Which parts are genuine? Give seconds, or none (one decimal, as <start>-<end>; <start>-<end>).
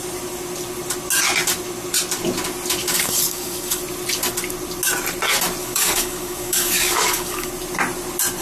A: 0.0-2.8; 3.8-5.6; 7.5-8.4